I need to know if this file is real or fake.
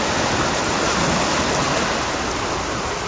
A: real